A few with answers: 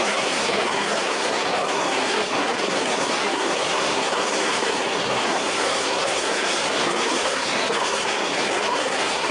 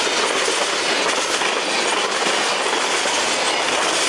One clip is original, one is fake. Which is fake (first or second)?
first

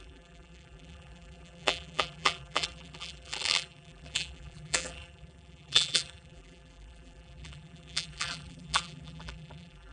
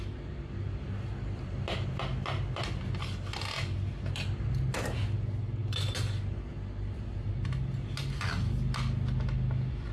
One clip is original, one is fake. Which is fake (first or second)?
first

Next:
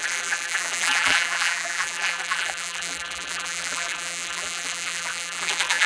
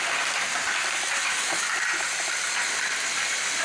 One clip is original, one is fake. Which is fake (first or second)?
first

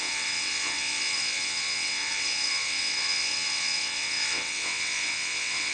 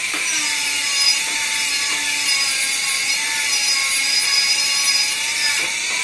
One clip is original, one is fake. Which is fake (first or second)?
first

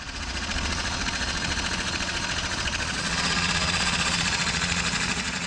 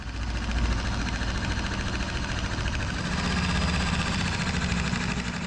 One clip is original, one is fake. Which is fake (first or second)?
first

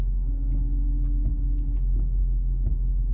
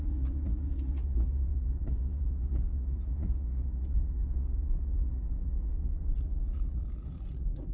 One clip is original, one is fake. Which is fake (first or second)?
second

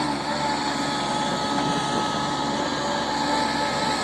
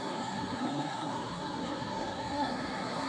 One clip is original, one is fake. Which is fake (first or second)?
second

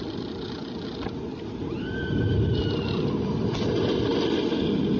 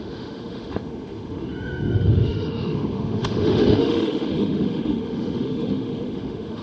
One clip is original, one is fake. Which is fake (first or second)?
second